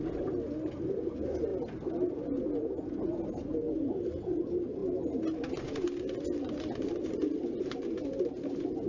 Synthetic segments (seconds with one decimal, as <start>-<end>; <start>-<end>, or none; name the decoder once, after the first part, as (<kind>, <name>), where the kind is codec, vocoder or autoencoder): none